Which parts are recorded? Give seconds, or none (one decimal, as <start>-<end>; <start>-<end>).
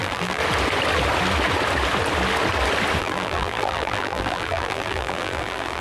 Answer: 0.4-3.0